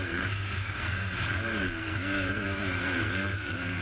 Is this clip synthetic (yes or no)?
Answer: yes